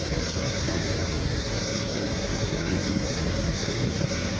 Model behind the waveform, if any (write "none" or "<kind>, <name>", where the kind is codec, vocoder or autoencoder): codec, SNAC